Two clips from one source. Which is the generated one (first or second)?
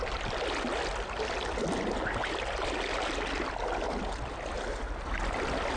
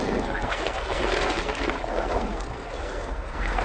second